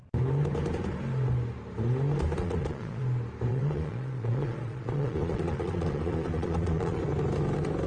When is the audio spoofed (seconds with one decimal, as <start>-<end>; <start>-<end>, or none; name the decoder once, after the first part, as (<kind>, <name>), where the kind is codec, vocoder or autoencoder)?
2.4-3.0 (vocoder, Vocos); 3.5-7.0

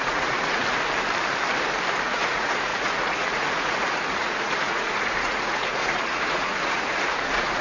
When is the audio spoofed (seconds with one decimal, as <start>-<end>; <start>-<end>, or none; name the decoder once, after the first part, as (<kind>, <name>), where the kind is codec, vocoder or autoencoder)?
0.0-0.6 (vocoder, Vocos); 2.0-7.6

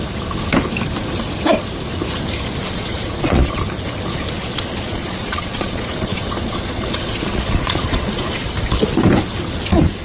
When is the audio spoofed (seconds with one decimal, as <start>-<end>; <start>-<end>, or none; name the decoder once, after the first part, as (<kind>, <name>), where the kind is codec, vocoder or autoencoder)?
2.6-3.6 (vocoder, Vocos); 4.4-8.4

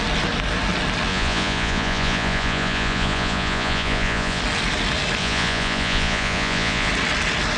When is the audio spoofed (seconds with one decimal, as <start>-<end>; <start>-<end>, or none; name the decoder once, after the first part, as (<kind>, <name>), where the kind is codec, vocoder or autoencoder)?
1.1-4.4 (vocoder, Vocos); 5.2-6.9

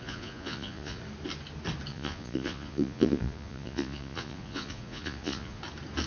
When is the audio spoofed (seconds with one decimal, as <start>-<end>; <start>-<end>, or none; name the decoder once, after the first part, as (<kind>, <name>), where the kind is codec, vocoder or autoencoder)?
0.0-1.0 (vocoder, Vocos); 1.9-5.6

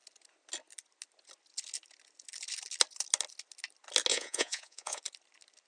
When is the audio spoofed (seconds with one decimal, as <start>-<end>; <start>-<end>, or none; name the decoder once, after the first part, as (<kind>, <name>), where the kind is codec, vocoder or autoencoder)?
4.1-5.0 (vocoder, Vocos)